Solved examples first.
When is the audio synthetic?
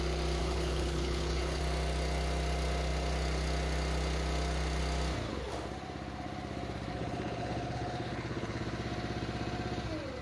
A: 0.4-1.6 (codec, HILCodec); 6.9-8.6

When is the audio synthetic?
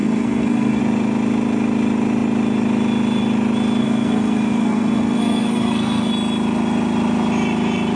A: 0.0-0.8 (codec, SNAC); 3.8-6.1